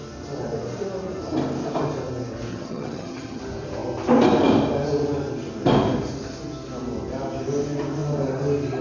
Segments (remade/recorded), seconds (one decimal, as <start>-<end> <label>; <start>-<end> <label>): 0.0-2.5 recorded; 2.5-3.4 remade; 3.4-8.8 recorded